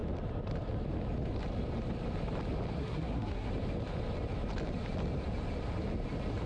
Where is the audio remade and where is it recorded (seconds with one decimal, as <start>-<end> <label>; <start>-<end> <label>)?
0.0-2.8 recorded; 2.8-3.5 remade; 3.5-6.5 recorded